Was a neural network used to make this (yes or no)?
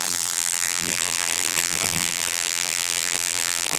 yes